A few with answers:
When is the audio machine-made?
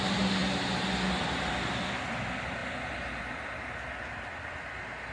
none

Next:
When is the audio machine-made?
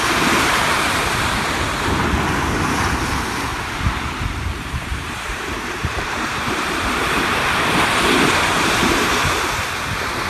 3.5-6.8 (vocoder, BigVGAN v2); 8.8-9.5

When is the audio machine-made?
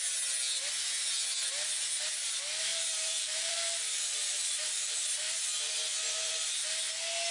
2.7-5.4 (vocoder, BigVGAN v2)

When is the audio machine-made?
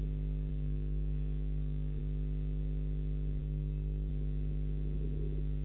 0.5-2.0 (codec, DAC); 3.4-4.1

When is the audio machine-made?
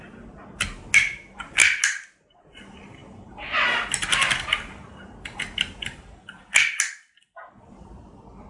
none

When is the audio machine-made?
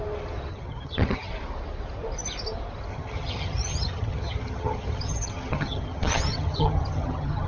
0.5-1.3 (vocoder, HiFi-GAN); 2.9-7.5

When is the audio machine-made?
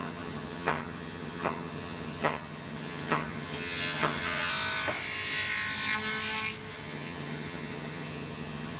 0.0-4.5 (vocoder, HiFi-GAN); 6.7-8.8